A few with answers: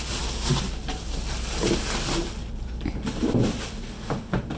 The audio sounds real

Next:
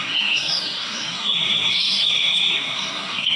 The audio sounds fake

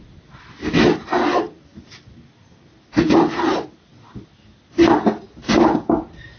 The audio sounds real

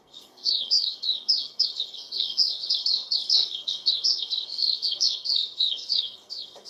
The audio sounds fake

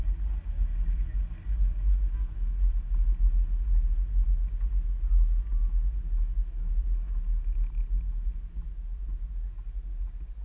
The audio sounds real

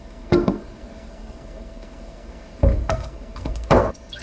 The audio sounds fake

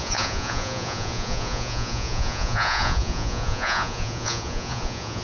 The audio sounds fake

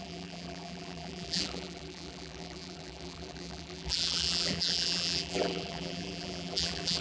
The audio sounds fake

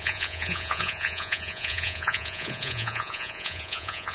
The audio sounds fake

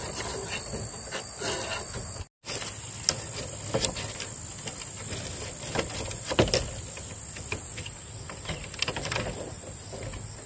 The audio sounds real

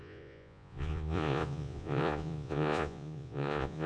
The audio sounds fake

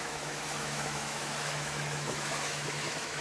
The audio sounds fake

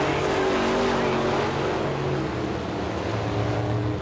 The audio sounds real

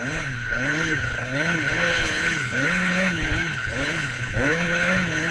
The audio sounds fake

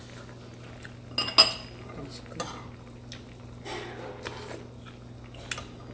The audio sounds real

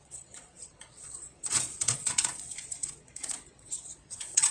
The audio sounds fake